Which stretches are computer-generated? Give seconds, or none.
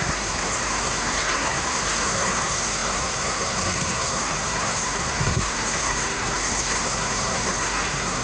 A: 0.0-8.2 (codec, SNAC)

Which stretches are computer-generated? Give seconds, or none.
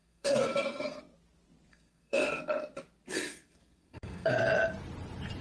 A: 0.0-1.0 (codec, SNAC); 1.7-2.4; 3.1-4.4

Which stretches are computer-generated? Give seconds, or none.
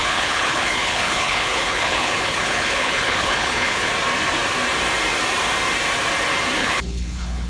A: 0.0-3.9 (codec, HILCodec); 6.6-7.5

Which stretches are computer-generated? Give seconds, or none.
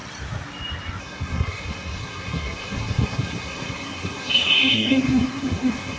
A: 1.0-6.0 (codec, SNAC)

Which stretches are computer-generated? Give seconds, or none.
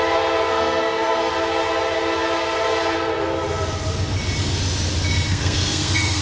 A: 0.5-1.3 (codec, SNAC); 5.3-6.2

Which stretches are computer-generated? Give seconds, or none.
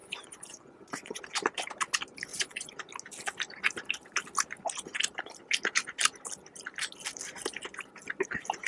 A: 0.0-1.2 (vocoder, Vocos); 2.3-2.9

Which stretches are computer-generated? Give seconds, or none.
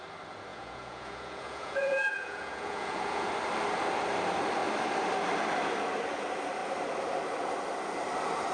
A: 0.5-3.3 (vocoder, Vocos)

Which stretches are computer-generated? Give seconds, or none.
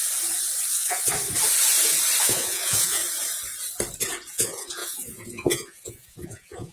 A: 0.7-1.1 (vocoder, Vocos); 2.2-3.0; 4.3-6.7